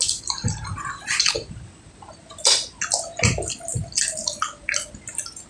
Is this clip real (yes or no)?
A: yes